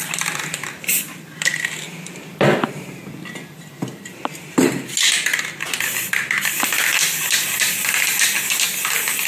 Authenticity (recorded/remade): recorded